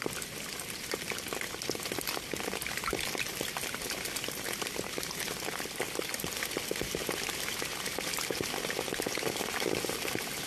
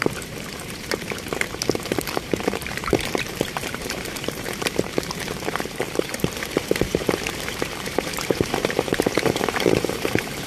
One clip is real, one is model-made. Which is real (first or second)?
first